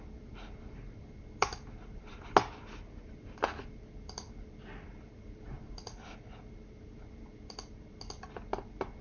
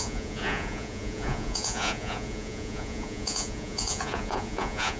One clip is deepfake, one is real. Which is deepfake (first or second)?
second